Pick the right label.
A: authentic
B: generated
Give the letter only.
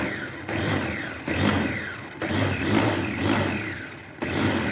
A